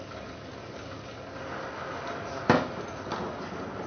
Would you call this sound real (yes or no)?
yes